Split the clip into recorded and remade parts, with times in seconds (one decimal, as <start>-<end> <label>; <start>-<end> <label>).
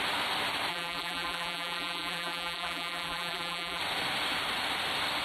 0.0-0.7 recorded; 0.7-3.8 remade; 3.8-5.2 recorded